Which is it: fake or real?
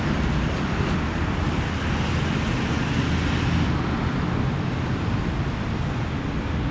real